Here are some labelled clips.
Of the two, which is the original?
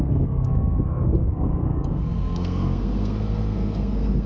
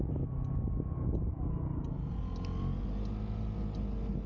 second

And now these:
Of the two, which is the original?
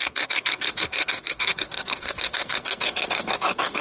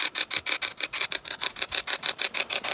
second